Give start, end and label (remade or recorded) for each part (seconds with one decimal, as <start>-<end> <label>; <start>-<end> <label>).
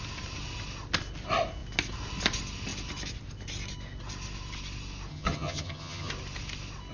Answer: 0.0-5.1 recorded; 5.1-6.1 remade; 6.1-6.9 recorded